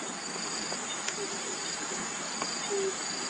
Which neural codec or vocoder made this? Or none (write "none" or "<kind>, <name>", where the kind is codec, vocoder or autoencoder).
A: none